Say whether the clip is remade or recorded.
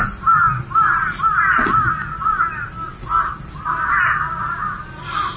recorded